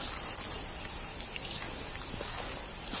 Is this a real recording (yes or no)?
yes